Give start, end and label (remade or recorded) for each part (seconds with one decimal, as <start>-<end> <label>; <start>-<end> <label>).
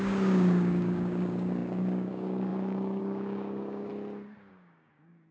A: 0.0-3.9 remade; 3.9-4.5 recorded; 4.5-5.3 remade